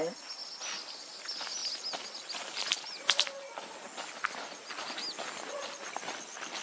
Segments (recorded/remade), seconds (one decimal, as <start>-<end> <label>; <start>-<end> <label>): 0.0-0.4 recorded; 0.4-1.2 remade; 1.2-6.6 recorded